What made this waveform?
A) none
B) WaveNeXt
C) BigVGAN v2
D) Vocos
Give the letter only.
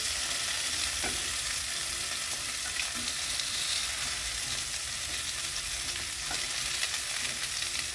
A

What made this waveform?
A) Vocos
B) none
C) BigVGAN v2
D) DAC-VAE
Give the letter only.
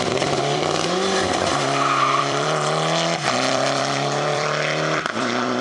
C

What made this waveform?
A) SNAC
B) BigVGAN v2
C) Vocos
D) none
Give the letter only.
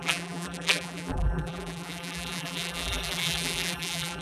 B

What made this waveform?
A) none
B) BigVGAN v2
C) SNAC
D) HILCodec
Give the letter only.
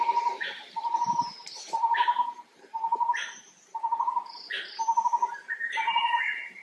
B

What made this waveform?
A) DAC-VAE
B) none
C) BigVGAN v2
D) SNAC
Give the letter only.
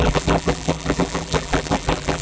C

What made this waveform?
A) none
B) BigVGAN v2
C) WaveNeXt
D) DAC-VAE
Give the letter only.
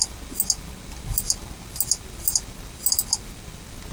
A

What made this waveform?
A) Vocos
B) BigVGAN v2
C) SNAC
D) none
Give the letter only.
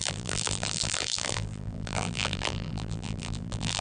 B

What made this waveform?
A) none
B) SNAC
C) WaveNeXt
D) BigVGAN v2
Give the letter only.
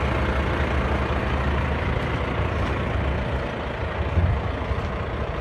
D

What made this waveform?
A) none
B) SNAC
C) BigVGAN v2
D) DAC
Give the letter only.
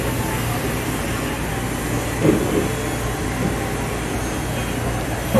A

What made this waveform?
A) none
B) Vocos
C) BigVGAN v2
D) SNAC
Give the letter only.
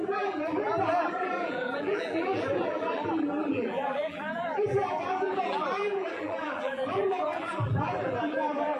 C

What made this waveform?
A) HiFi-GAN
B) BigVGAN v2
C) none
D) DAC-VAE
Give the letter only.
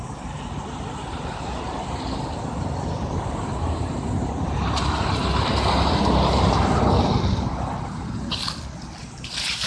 C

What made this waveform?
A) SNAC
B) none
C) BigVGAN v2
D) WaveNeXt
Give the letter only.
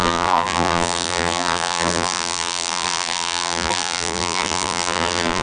C